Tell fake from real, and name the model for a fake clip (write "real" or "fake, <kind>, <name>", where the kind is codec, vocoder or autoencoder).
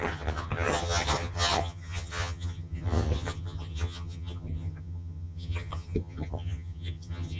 fake, vocoder, HiFi-GAN